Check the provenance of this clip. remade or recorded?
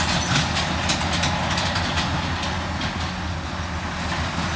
recorded